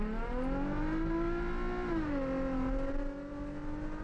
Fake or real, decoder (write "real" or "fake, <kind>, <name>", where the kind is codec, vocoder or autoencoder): real